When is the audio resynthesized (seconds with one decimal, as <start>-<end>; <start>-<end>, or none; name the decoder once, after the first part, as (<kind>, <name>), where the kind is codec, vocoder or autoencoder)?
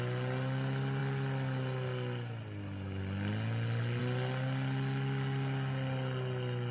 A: none